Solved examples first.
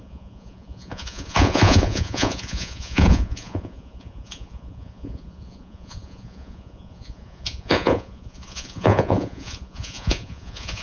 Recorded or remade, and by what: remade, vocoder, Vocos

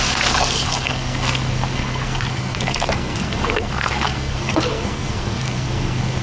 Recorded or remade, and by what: remade, codec, SNAC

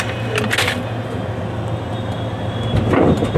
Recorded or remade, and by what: recorded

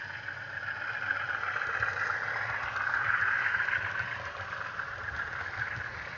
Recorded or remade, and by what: recorded